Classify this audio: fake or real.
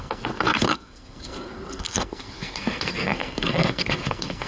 fake